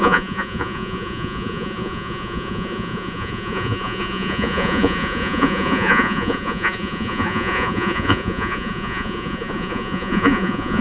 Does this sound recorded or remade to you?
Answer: remade